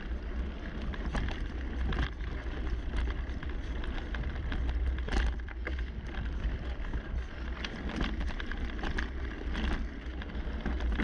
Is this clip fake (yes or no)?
no